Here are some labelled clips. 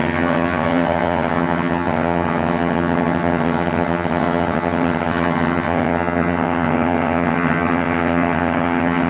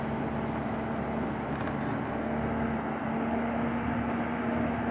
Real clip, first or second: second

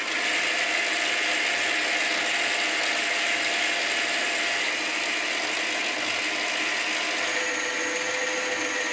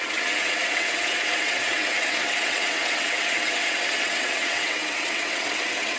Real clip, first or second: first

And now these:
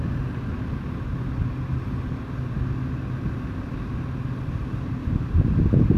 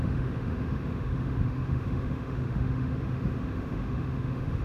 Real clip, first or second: first